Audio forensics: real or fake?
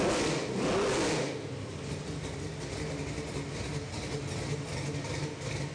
real